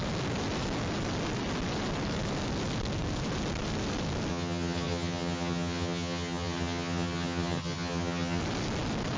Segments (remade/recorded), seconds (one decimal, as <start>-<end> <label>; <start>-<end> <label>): 0.0-4.3 recorded; 4.3-8.4 remade; 8.4-9.2 recorded